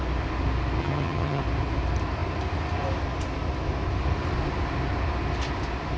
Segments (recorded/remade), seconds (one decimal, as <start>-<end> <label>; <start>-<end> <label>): 0.0-0.8 recorded; 0.8-1.4 remade; 1.4-6.0 recorded

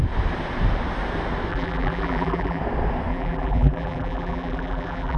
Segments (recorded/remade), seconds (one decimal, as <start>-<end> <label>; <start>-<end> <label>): 0.0-1.5 recorded; 1.5-2.6 remade; 2.6-3.1 recorded; 3.1-5.2 remade

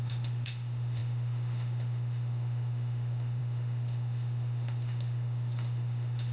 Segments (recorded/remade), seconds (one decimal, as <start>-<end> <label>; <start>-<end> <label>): 0.0-6.3 remade

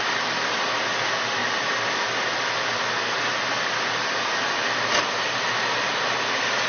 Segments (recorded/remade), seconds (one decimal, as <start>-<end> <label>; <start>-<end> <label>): 0.0-6.7 recorded

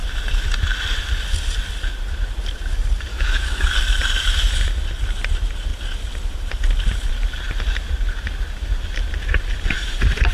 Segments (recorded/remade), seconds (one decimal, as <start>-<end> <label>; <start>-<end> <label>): 0.0-3.1 recorded; 3.1-3.7 remade; 3.7-10.3 recorded

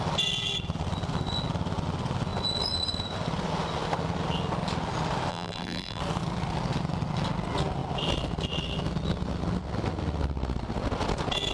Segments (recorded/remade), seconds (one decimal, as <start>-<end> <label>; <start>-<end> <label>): 0.0-5.3 recorded; 5.3-6.0 remade; 6.0-11.5 recorded